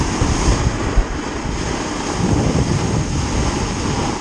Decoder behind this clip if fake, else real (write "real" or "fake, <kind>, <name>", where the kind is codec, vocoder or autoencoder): real